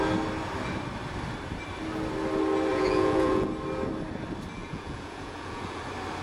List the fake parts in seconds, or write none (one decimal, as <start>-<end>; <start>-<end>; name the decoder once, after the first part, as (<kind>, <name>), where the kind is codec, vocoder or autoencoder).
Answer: 2.7-3.5 (vocoder, Vocos); 4.6-5.8